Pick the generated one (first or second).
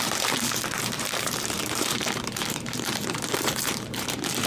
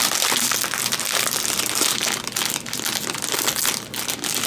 first